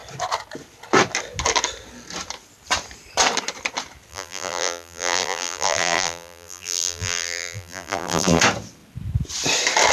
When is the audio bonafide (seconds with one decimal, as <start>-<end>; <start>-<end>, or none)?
0.0-4.1; 8.4-9.9